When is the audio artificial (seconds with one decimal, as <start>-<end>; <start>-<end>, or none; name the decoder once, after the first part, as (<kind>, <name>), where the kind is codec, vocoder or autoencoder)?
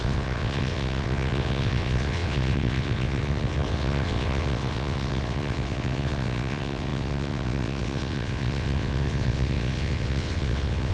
0.0-10.9 (vocoder, WaveNeXt)